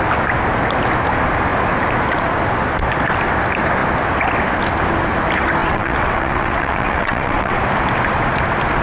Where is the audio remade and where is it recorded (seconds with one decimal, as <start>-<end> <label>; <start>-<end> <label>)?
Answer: 0.0-5.6 recorded; 5.6-7.6 remade; 7.6-8.8 recorded